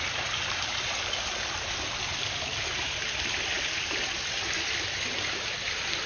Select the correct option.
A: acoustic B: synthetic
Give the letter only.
A